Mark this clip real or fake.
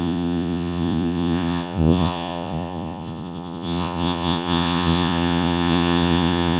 fake